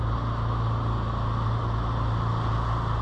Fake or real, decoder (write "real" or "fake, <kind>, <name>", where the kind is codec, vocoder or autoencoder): real